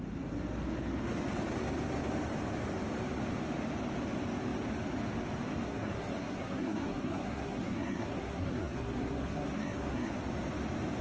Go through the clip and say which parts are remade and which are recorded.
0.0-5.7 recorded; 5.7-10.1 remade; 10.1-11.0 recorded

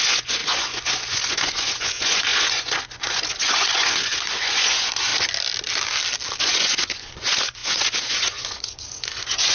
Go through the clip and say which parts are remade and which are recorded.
0.0-5.1 remade; 5.1-6.4 recorded; 6.4-9.5 remade

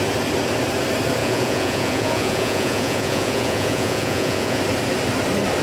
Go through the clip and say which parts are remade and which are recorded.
0.0-1.2 recorded; 1.2-4.6 remade; 4.6-5.6 recorded